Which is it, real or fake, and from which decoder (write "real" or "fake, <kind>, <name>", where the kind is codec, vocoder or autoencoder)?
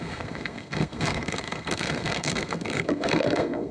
fake, codec, SNAC